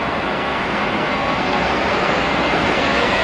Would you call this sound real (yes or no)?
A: no